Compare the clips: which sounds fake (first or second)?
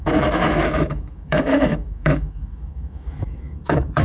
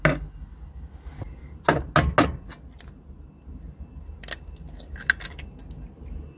first